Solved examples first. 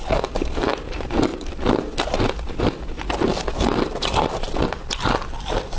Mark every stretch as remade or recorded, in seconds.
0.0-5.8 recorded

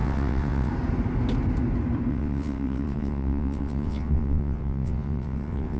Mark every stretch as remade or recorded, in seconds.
0.0-0.7 remade; 0.7-2.1 recorded; 2.1-5.8 remade

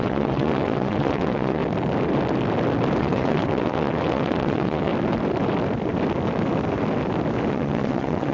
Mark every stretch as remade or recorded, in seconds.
0.0-1.6 remade; 1.6-3.0 recorded; 3.0-4.9 remade; 4.9-7.5 recorded; 7.5-8.3 remade

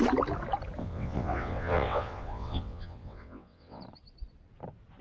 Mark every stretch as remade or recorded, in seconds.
0.0-0.8 recorded; 0.8-3.8 remade; 3.8-5.0 recorded

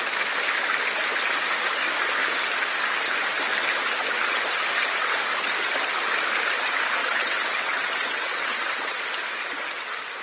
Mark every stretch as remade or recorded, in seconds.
0.0-7.0 recorded; 7.0-9.0 remade; 9.0-10.2 recorded

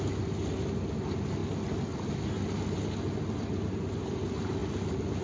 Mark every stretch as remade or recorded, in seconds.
0.0-5.2 recorded

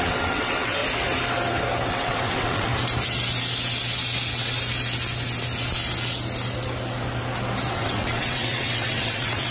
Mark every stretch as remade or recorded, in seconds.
0.0-0.8 remade; 0.8-1.9 recorded; 1.9-2.7 remade; 2.7-7.7 recorded; 7.7-9.5 remade